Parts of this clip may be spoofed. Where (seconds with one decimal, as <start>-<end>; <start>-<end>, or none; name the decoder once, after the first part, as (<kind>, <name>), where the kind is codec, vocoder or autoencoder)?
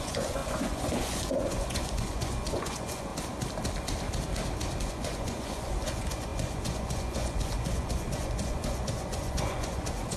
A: 0.0-3.1 (vocoder, Vocos); 4.8-10.2